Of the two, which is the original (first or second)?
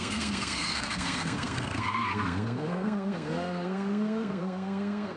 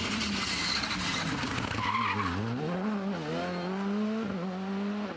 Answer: second